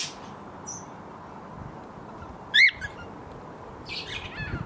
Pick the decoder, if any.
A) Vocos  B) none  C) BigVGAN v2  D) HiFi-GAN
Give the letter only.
B